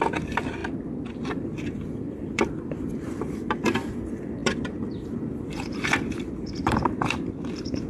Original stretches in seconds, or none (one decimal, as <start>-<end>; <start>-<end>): none